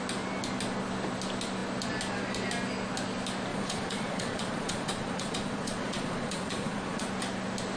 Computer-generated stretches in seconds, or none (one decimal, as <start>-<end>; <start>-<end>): 3.5-7.1